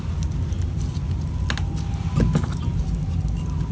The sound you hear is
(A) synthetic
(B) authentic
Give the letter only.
B